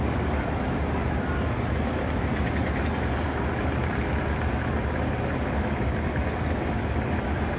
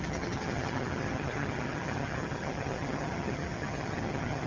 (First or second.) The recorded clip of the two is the first